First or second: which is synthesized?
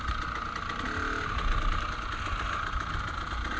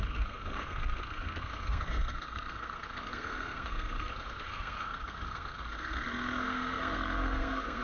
second